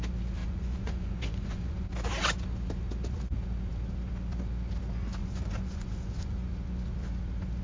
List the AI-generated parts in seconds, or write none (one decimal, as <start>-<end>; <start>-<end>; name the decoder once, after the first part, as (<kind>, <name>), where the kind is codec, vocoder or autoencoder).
0.4-1.9 (vocoder, Vocos); 5.2-6.5